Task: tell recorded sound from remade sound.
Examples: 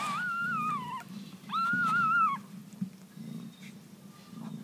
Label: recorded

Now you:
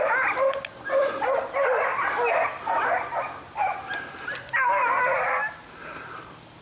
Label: recorded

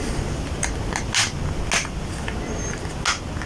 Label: recorded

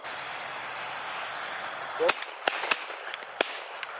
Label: recorded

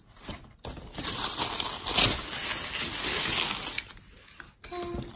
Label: recorded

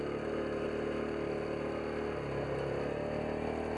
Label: recorded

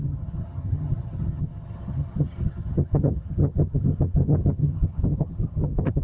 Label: remade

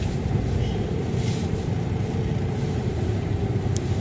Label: remade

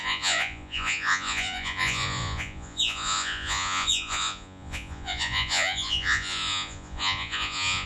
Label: remade